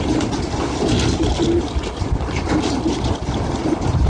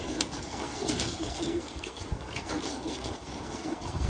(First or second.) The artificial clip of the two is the second